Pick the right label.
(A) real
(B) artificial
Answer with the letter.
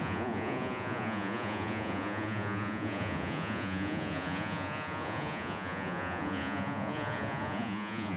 B